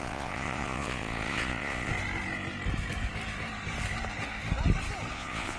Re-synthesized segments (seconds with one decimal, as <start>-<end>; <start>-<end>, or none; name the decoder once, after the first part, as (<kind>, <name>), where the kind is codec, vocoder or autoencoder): 0.0-1.9 (vocoder, Vocos); 5.1-5.6